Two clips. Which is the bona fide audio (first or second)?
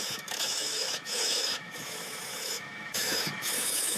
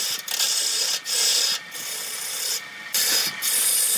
second